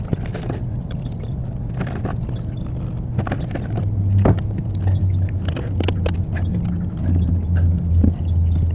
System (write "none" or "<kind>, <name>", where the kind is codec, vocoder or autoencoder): none